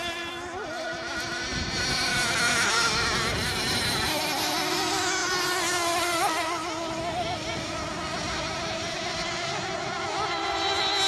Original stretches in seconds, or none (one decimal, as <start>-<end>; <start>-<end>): 0.0-11.1

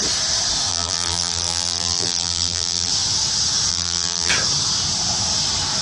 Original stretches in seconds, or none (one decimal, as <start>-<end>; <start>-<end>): 0.0-0.7; 2.9-3.7; 4.3-5.8

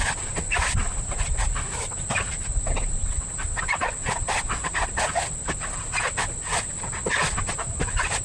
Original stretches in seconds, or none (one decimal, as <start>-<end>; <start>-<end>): 0.0-5.4; 6.4-8.2

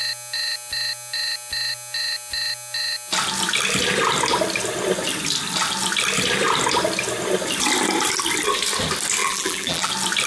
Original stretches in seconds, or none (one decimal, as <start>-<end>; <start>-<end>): 0.0-9.2; 9.9-10.3

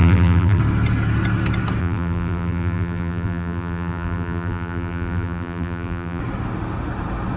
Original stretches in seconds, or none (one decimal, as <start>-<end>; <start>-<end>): 0.6-1.8; 6.2-7.4

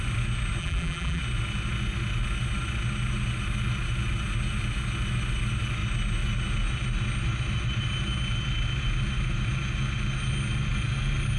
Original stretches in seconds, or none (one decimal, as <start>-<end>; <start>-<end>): 0.0-0.6; 1.2-11.4